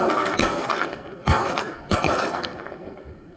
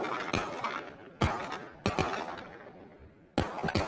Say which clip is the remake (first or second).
first